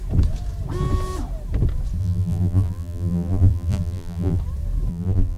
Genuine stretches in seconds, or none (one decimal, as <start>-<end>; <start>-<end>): 0.0-2.0; 4.4-4.9